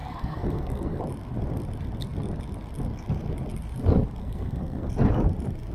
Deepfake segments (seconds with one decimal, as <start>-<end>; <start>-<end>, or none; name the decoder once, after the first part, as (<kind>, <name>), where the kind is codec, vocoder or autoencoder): 0.0-1.0 (codec, SNAC); 4.2-4.9